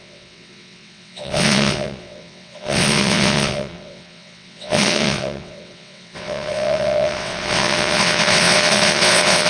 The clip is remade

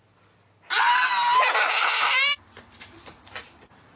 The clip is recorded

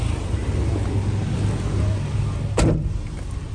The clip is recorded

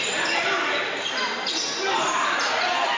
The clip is recorded